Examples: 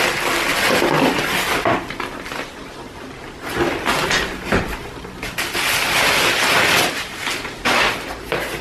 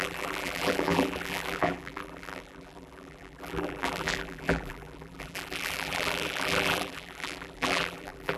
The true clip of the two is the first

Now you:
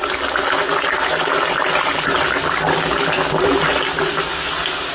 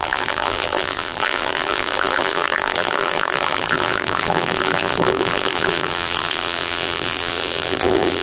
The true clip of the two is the first